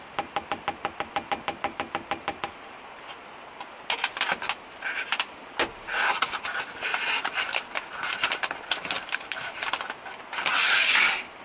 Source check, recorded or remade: recorded